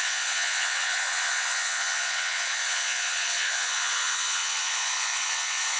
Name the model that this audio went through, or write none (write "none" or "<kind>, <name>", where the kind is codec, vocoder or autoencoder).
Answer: vocoder, Vocos